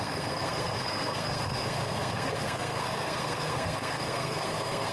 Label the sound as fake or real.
fake